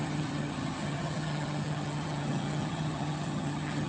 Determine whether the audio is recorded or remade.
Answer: remade